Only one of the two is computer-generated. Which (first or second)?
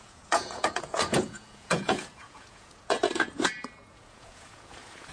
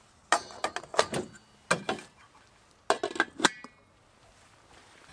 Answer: first